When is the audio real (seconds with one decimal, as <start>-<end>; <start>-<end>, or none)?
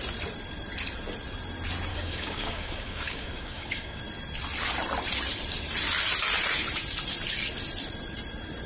0.0-1.9; 4.0-8.7